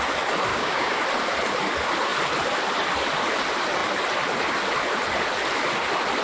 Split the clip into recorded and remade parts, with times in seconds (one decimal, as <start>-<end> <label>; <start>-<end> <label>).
0.0-0.5 recorded; 0.5-1.0 remade; 1.0-6.2 recorded